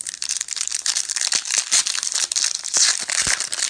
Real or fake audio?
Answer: real